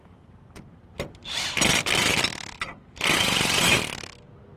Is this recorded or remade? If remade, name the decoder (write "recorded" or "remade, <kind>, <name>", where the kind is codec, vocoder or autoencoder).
recorded